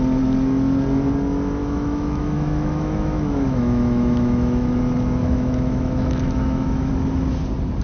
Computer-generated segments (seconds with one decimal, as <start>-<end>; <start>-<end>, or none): 1.6-4.8; 5.2-6.9